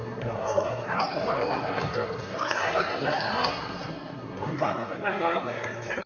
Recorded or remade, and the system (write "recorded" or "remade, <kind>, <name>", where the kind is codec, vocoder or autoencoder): remade, codec, SNAC